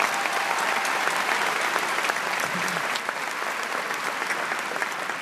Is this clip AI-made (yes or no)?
no